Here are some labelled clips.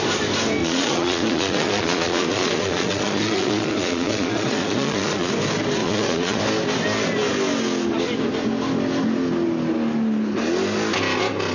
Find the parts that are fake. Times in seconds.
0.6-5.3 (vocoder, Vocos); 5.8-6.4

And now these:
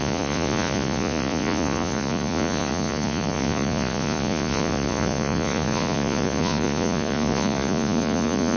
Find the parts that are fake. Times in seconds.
0.0-8.6 (vocoder, Vocos)